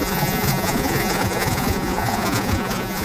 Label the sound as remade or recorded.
remade